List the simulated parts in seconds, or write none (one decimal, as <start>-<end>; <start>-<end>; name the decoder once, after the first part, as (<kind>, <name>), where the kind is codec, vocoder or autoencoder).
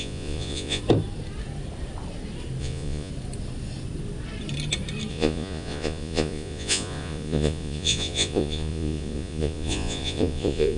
0.0-0.8 (vocoder, Vocos); 2.6-3.1; 5.1-10.8